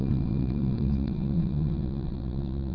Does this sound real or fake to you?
fake